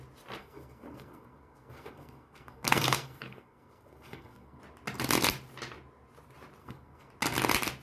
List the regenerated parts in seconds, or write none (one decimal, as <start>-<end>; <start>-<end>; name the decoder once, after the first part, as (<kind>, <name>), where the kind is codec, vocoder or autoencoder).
0.4-4.6 (codec, SNAC); 6.6-7.1